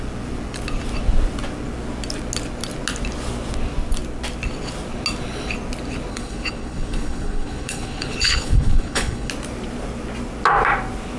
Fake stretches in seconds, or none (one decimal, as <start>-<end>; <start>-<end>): 6.1-9.3